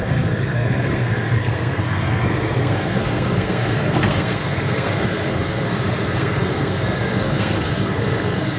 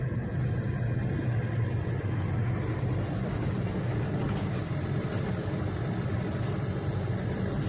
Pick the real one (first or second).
second